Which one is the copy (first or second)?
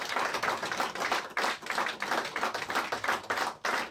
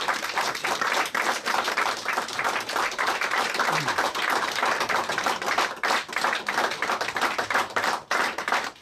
second